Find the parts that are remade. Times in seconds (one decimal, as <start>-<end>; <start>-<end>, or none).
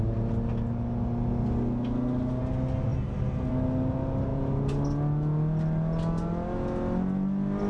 none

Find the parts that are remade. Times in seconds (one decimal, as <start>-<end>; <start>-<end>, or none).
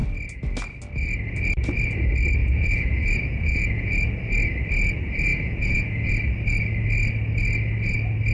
2.4-3.9; 5.3-6.1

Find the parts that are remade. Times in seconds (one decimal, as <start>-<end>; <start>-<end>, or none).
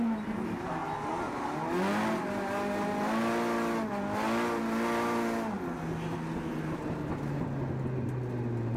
none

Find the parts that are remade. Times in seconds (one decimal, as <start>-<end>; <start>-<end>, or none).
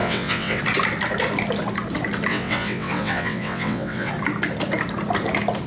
0.0-0.6; 2.3-4.1